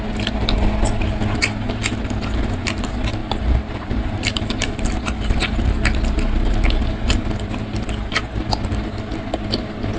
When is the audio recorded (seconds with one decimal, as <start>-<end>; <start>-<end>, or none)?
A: 0.0-3.2; 5.7-10.0